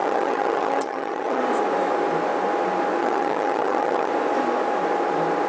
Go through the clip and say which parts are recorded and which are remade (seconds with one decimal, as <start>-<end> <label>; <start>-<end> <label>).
0.0-1.4 remade; 1.4-3.0 recorded; 3.0-4.1 remade; 4.1-5.5 recorded